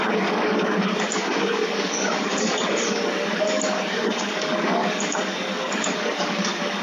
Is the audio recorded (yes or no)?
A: no